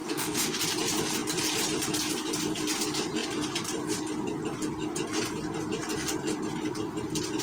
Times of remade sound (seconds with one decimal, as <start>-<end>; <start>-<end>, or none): 0.0-0.6